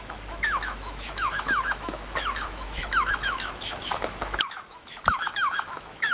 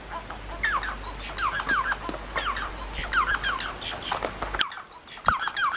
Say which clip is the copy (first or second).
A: first